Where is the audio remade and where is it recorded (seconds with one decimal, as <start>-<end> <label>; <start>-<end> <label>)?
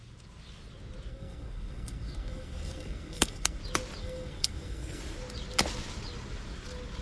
0.0-1.1 recorded; 1.1-3.6 remade; 3.6-4.0 recorded; 4.0-5.0 remade; 5.0-7.0 recorded